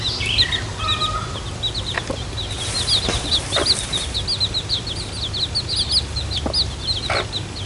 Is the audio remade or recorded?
recorded